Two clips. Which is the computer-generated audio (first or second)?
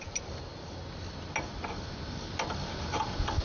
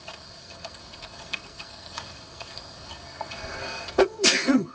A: second